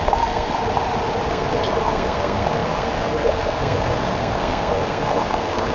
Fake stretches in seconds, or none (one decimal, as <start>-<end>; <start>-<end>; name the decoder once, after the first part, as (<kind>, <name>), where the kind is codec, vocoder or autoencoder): 0.0-0.6 (codec, SNAC); 1.3-5.7